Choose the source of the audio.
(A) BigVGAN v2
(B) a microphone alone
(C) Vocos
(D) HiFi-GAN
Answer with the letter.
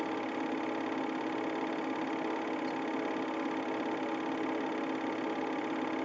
B